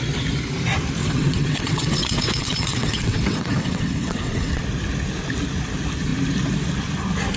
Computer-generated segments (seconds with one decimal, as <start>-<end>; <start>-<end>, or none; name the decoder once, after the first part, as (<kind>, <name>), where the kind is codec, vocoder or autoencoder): 1.0-4.6 (vocoder, WaveNeXt)